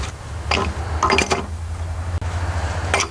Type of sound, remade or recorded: recorded